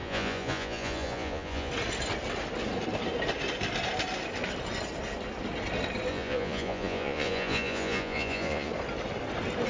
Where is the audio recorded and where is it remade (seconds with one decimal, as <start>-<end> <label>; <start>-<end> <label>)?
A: 0.0-1.7 remade; 1.7-6.1 recorded; 6.1-8.7 remade; 8.7-9.7 recorded